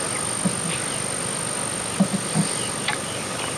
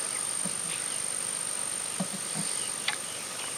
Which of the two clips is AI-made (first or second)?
second